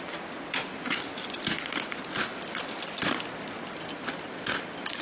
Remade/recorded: recorded